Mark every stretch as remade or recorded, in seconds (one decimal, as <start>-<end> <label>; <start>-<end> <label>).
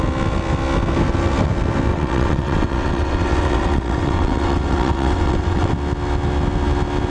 0.0-1.9 recorded; 1.9-5.7 remade; 5.7-7.1 recorded